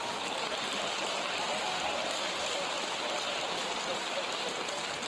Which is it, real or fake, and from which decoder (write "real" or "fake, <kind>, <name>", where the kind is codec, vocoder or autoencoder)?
real